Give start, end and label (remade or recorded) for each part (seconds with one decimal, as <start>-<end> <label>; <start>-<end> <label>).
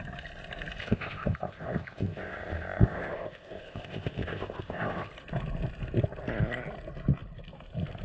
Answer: 0.0-0.8 recorded; 0.8-5.1 remade; 5.1-8.0 recorded